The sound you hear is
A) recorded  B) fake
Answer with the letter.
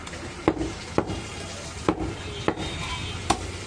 A